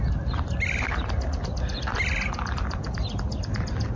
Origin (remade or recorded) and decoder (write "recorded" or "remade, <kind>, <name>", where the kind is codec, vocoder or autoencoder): recorded